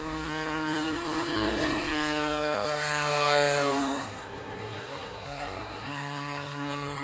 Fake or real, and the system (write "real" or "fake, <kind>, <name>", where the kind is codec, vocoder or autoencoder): fake, codec, SNAC